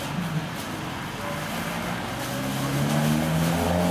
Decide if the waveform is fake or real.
real